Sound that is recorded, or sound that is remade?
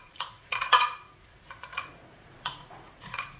remade